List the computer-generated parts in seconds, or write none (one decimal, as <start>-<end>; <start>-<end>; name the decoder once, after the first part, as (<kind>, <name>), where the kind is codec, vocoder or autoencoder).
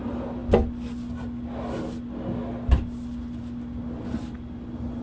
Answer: none